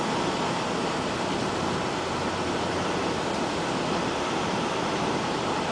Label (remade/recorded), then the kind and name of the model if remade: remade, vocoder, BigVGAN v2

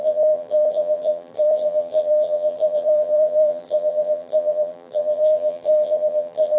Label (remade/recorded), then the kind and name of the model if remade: remade, vocoder, BigVGAN v2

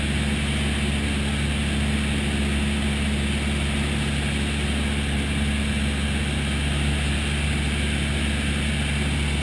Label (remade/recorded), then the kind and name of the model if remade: recorded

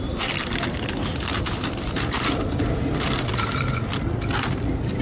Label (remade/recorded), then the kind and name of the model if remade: remade, vocoder, BigVGAN v2